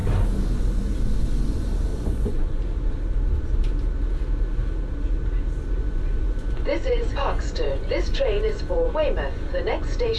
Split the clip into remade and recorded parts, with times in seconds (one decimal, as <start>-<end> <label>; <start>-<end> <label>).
0.0-1.9 recorded; 1.9-2.6 remade; 2.6-5.8 recorded; 5.8-10.2 remade